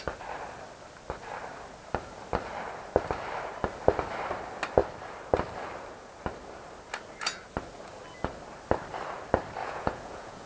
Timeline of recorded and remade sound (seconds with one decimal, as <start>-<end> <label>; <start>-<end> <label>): 0.0-9.6 recorded; 9.6-10.5 remade